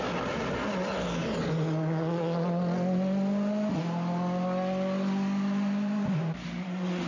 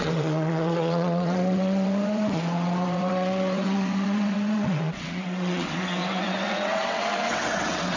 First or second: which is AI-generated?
second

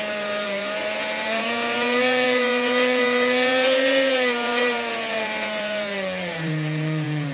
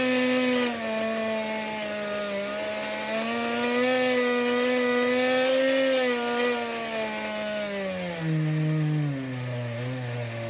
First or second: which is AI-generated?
first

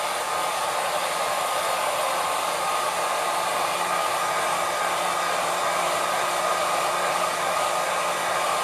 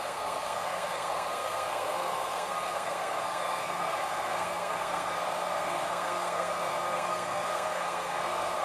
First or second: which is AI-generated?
second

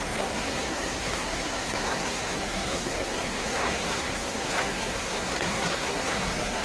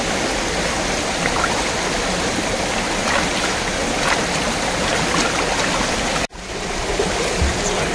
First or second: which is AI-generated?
first